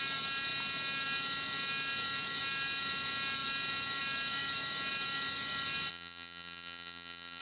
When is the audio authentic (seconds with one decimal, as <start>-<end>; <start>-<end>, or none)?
0.0-5.9